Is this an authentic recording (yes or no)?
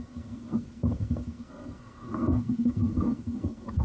no